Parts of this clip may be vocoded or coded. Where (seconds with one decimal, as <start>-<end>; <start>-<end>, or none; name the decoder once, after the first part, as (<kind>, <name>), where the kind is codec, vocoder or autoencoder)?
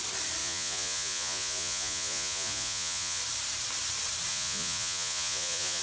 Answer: 0.4-3.2 (vocoder, Vocos); 4.3-5.8